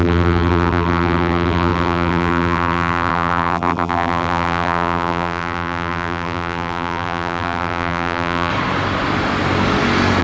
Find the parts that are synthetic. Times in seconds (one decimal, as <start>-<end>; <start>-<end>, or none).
0.0-8.5